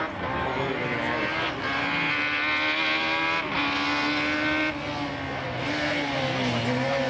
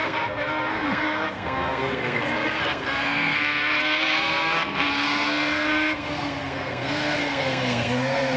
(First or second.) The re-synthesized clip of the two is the second